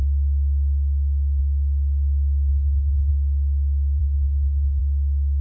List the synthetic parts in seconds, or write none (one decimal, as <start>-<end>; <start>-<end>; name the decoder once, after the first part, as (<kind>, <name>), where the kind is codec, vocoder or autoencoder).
2.5-3.1 (codec, HILCodec); 4.0-4.8